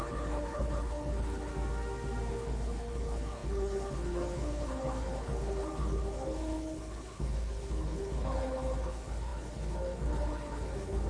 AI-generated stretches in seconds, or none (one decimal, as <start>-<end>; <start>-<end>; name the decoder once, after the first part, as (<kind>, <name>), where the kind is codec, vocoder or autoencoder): 0.0-1.5 (codec, HILCodec); 2.3-11.1